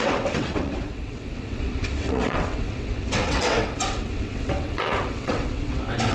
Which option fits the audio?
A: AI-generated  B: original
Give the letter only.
A